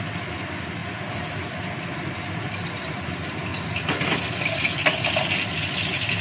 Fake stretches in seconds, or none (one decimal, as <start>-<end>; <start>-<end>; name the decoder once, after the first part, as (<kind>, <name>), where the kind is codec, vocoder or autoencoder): none